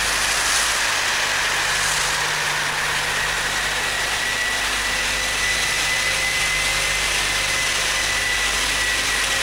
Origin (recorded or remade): recorded